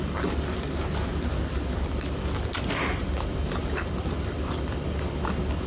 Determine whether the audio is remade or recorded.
recorded